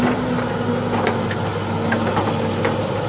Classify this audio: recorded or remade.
recorded